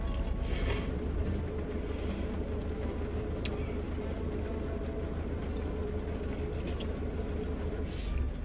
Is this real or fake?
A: real